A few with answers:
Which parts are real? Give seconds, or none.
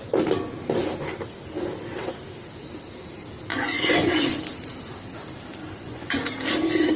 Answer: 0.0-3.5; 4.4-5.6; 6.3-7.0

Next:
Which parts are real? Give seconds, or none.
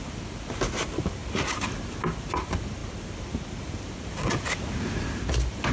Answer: 0.0-5.7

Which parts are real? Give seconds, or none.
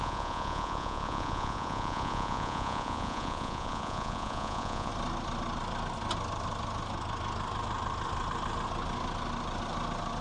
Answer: 4.9-10.2